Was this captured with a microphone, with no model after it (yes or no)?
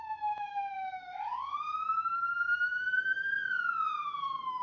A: no